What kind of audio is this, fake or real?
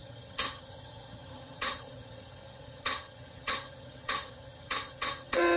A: fake